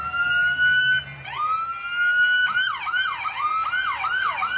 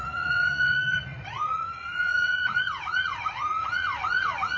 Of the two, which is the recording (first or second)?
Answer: first